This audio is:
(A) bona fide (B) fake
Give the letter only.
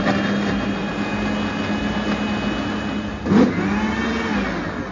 A